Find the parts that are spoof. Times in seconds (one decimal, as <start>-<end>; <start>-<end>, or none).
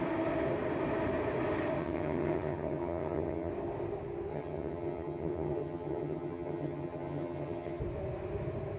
1.8-3.5; 4.3-7.8